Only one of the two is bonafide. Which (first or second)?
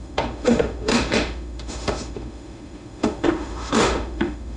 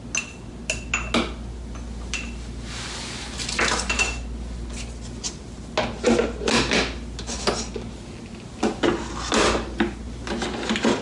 second